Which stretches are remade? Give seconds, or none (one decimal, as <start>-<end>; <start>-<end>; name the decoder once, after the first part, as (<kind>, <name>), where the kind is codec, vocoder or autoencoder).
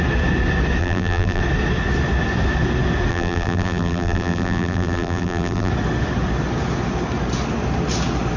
0.8-1.4 (vocoder, BigVGAN v2); 3.1-5.7